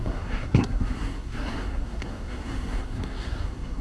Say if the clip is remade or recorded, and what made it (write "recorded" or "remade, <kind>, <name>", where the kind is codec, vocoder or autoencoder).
remade, codec, SNAC